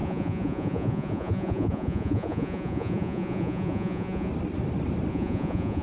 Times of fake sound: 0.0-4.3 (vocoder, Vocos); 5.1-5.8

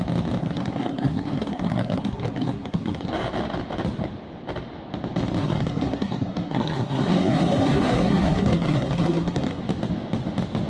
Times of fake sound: 0.4-3.1 (codec, SNAC); 5.4-9.6